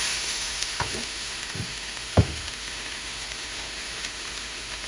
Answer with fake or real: fake